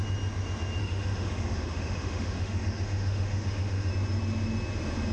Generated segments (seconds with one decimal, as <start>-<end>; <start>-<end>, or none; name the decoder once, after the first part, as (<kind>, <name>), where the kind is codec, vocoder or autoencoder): 0.8-3.9 (autoencoder, DAC-VAE)